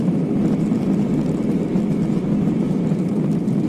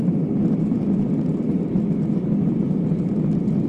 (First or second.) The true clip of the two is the first